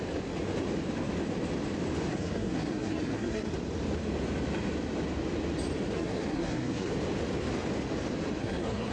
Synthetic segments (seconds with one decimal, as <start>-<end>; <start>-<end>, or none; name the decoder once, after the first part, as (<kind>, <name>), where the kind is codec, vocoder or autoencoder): 2.1-3.5 (codec, SNAC); 5.9-6.9; 8.4-8.9